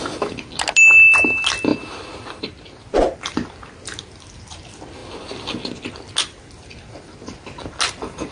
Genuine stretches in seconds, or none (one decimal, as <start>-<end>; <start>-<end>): 0.0-8.3